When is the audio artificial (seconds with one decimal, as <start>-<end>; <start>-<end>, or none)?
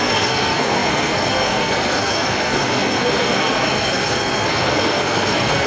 0.0-5.7